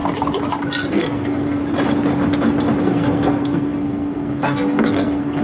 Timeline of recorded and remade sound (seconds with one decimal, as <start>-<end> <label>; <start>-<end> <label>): 0.0-0.9 recorded; 0.9-1.6 remade; 1.6-2.8 recorded; 2.8-5.4 remade